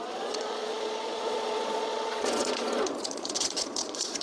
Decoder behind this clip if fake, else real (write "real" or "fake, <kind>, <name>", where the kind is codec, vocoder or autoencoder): fake, vocoder, Vocos